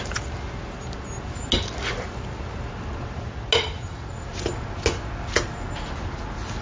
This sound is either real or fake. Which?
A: real